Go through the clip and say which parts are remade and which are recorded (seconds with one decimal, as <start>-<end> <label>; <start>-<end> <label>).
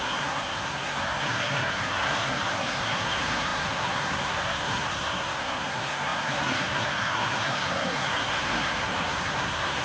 0.0-9.8 remade